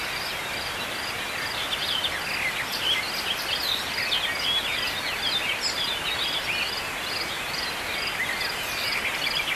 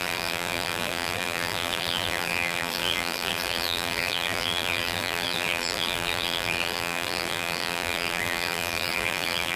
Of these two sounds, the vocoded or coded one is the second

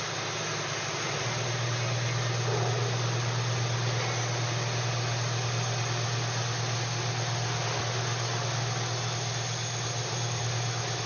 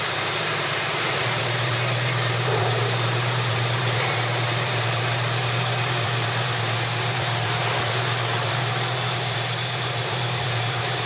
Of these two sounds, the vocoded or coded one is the second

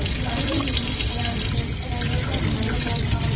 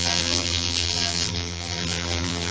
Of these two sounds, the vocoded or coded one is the second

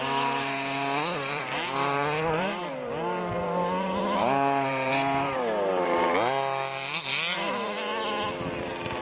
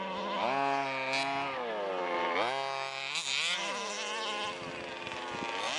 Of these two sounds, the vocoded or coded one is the first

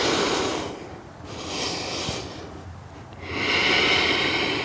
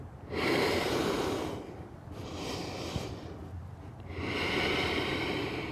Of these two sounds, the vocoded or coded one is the second